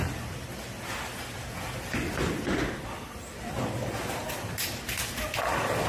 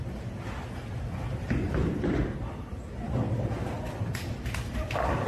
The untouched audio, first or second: first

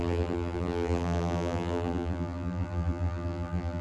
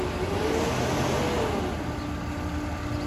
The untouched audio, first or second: second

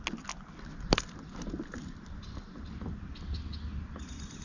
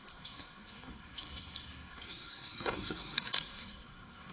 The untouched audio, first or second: first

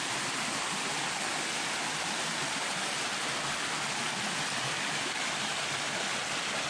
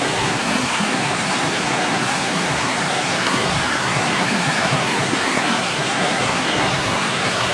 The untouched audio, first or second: first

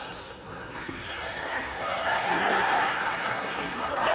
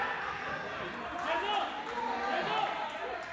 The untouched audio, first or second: second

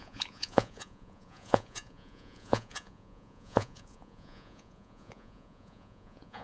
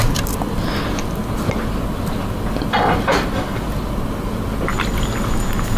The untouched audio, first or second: second